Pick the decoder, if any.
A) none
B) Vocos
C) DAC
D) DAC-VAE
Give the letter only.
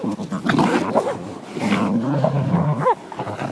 A